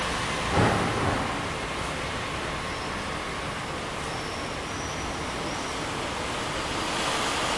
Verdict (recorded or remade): recorded